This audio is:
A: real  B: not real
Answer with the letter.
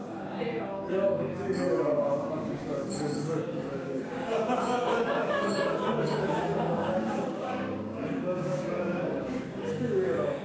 B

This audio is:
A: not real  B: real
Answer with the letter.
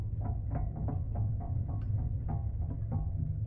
B